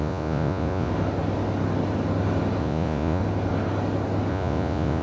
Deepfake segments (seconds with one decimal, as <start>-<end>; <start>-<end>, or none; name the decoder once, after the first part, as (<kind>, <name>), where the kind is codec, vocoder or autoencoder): 0.0-0.9 (vocoder, Vocos); 2.6-3.2; 4.3-5.0